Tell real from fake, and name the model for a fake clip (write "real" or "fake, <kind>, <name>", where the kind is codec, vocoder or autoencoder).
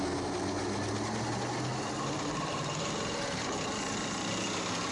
real